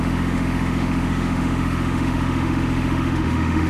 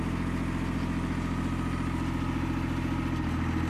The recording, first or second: second